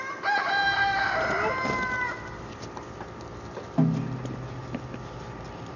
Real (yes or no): yes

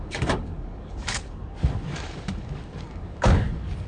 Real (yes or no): no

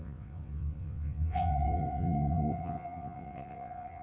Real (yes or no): no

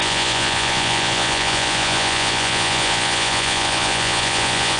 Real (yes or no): no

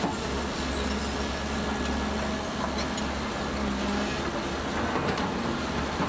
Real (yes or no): yes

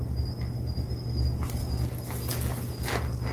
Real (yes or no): yes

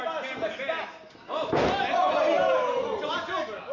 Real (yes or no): yes